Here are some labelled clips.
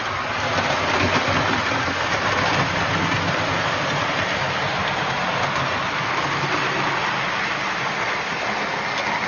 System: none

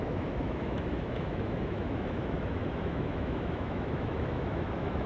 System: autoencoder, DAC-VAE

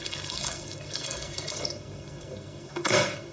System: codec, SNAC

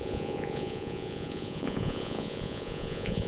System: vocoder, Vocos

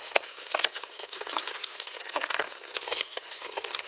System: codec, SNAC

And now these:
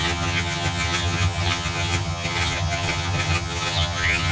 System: vocoder, HiFi-GAN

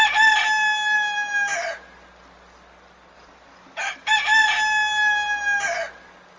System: none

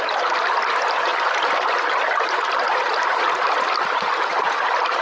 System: none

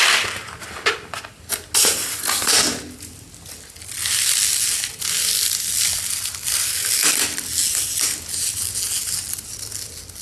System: none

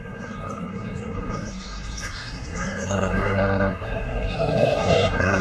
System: codec, SNAC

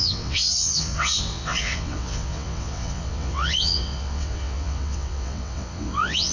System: vocoder, WaveNeXt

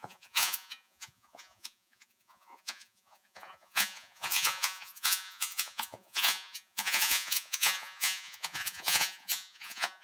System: vocoder, Vocos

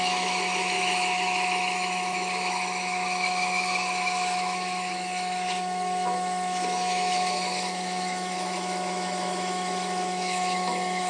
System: autoencoder, DAC-VAE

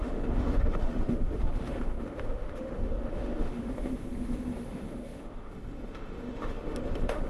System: autoencoder, DAC-VAE